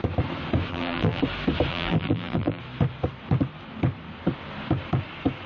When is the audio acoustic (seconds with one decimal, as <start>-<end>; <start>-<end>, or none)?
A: 0.0-0.7; 1.2-1.7; 2.6-5.5